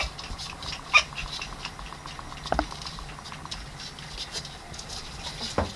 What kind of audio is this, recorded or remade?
recorded